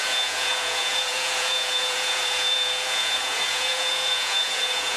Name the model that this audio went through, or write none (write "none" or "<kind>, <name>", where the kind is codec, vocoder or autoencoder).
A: vocoder, Vocos